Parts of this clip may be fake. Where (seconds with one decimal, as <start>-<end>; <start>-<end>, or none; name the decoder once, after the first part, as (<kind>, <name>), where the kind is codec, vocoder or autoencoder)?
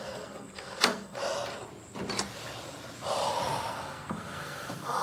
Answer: 0.0-1.2 (codec, SNAC); 3.7-5.0